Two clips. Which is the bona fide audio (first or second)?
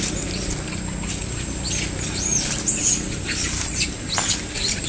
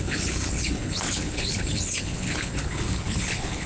first